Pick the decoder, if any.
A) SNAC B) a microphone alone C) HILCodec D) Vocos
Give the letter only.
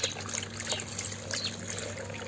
B